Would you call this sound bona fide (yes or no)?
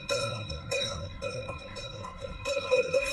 no